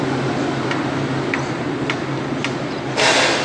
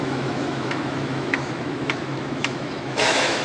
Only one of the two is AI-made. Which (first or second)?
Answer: second